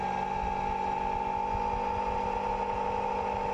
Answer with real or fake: real